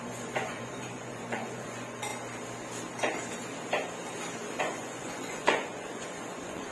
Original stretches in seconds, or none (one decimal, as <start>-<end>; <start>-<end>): 2.1-4.6

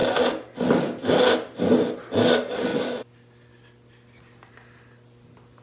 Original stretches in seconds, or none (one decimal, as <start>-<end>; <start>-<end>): 0.0-5.6

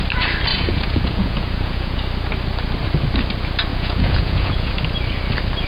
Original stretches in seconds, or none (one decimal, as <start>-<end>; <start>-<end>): 0.0-0.5; 2.0-3.7; 4.7-5.7

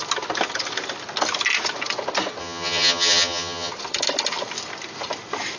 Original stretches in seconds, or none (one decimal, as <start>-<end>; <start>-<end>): 0.0-2.4; 3.7-5.6

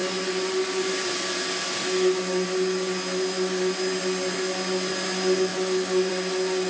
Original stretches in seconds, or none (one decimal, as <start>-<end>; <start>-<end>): 0.0-6.7

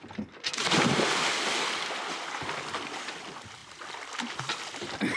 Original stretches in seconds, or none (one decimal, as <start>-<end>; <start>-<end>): 0.0-5.2

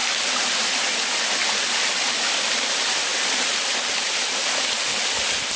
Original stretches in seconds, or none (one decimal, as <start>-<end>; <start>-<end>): 0.0-1.6

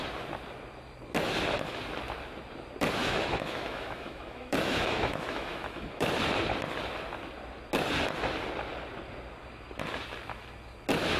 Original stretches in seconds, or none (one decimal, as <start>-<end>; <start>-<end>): 0.0-3.0; 6.1-11.2